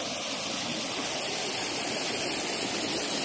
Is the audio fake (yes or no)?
no